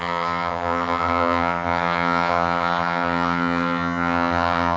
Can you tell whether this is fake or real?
fake